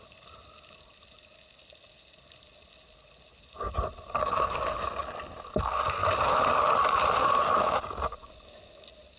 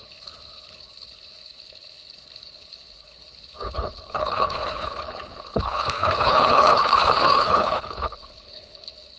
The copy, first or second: second